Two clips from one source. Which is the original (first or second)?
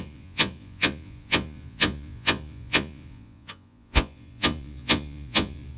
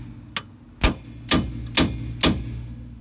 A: second